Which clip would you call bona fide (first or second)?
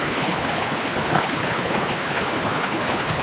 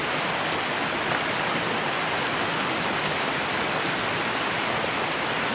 second